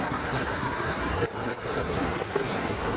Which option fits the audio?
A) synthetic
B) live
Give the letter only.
A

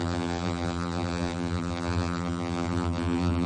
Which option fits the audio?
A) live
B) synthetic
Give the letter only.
B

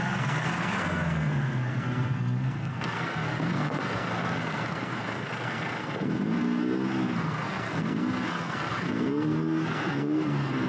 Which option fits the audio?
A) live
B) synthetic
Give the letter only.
B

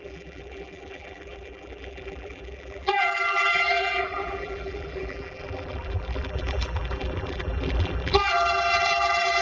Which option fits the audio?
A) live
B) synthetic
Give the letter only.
B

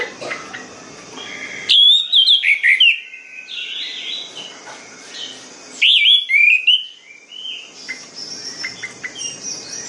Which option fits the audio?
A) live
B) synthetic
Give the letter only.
A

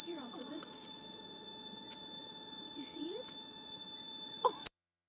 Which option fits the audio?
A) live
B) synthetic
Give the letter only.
B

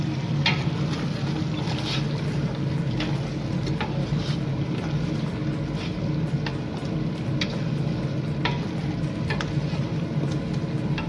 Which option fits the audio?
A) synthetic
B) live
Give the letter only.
B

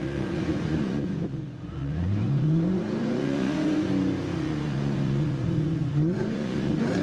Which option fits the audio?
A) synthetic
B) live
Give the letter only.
A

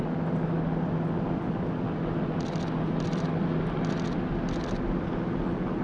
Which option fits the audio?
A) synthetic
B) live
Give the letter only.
B